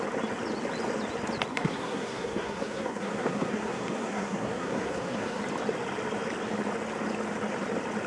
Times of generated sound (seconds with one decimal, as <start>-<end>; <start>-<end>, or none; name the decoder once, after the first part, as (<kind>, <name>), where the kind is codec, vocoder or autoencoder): 1.5-5.4 (codec, SNAC)

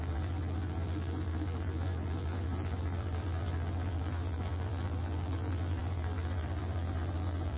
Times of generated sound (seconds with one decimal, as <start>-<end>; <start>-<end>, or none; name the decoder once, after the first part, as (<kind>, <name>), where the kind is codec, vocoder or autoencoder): 0.0-7.6 (vocoder, BigVGAN v2)

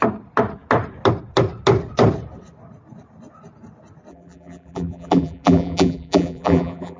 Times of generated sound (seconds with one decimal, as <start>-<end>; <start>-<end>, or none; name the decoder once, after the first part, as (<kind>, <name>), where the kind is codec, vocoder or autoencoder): 4.1-7.0 (vocoder, BigVGAN v2)

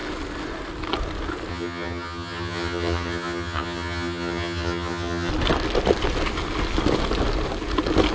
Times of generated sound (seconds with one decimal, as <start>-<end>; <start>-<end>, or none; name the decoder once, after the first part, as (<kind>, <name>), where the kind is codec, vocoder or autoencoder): 1.5-5.3 (vocoder, HiFi-GAN)

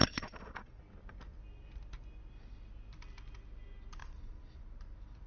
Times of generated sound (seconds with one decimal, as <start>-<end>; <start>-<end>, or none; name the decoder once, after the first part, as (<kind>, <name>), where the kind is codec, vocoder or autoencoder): 0.0-0.8 (vocoder, Vocos); 4.0-4.6

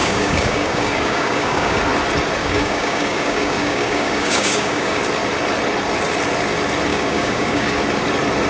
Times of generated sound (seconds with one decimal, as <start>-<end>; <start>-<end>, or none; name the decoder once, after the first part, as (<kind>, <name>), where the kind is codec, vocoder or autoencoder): 0.0-1.8 (codec, DAC); 2.4-5.0; 6.9-7.8

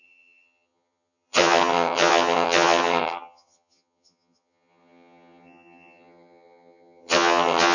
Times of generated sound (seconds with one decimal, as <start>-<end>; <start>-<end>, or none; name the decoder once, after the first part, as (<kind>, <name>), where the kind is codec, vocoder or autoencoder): 0.0-7.7 (vocoder, HiFi-GAN)

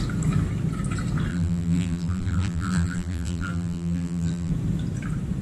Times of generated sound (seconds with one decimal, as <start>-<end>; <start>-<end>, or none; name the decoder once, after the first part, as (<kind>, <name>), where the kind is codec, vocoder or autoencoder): 1.3-4.5 (vocoder, BigVGAN v2)